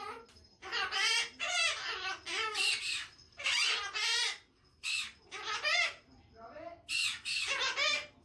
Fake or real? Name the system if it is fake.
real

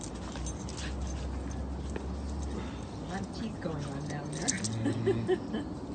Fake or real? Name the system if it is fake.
real